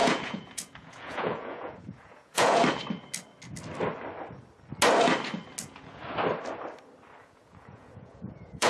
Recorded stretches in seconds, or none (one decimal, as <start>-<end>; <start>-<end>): 2.6-5.6; 6.0-7.2

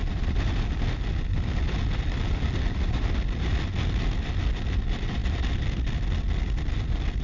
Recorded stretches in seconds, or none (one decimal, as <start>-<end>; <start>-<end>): 0.0-7.2

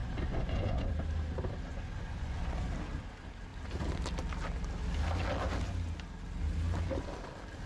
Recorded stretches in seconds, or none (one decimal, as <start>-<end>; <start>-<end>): 0.9-1.7; 2.7-7.7

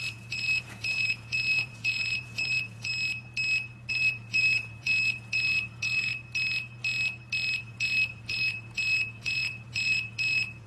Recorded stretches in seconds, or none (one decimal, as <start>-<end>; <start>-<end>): 2.9-3.9; 6.1-7.6

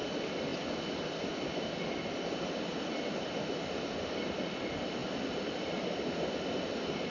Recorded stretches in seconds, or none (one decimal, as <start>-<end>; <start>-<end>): 0.0-7.1

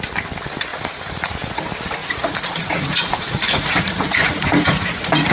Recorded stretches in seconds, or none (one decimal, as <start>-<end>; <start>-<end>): 0.0-0.7; 1.6-2.0

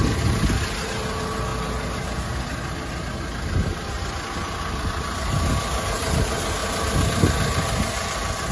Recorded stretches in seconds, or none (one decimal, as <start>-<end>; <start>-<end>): 0.0-8.5

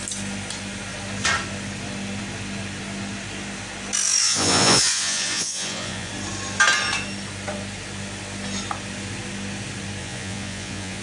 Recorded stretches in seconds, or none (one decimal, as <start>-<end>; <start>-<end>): 0.0-4.2; 6.1-10.0